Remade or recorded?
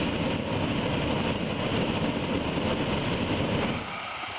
recorded